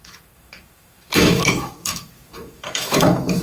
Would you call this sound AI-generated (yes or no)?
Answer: yes